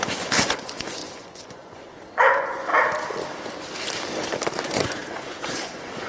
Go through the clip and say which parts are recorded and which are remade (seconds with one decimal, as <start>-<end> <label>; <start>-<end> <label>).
0.0-2.7 remade; 2.7-4.6 recorded; 4.6-6.1 remade